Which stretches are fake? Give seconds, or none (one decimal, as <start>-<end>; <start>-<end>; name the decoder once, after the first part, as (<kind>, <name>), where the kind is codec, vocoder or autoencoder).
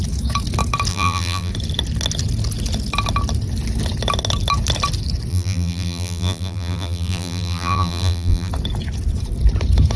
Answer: 0.9-1.5 (vocoder, BigVGAN v2); 5.3-8.5